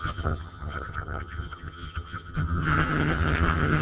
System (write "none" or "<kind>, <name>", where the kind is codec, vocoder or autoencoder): vocoder, HiFi-GAN